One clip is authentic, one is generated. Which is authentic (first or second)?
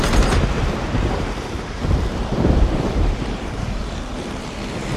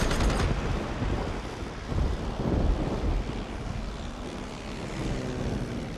second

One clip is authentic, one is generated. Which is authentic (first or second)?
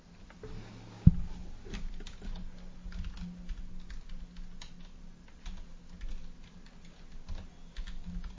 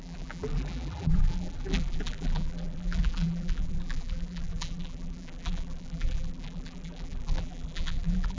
first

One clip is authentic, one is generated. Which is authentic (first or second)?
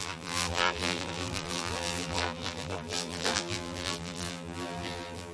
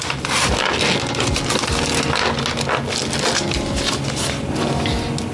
second